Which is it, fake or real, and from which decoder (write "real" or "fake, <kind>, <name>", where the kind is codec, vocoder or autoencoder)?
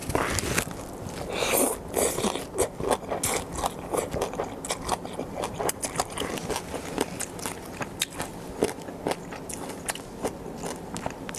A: real